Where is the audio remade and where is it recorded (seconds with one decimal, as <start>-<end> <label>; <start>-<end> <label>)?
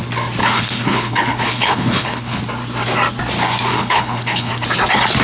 0.0-0.4 recorded; 0.4-2.4 remade; 2.4-3.7 recorded; 3.7-4.5 remade; 4.5-5.2 recorded